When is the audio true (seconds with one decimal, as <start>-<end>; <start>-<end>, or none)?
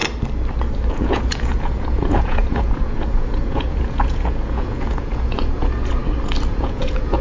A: 0.0-0.9; 6.0-6.5